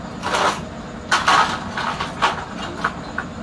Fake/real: real